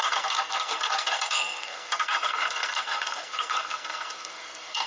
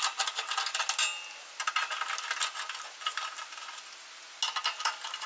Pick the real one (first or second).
second